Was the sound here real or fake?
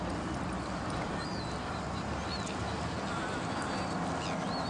real